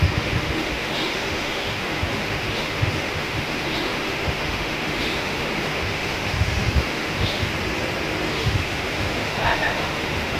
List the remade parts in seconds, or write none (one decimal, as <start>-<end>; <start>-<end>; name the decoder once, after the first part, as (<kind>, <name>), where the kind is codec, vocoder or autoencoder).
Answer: 0.0-7.5 (autoencoder, DAC-VAE); 8.3-10.4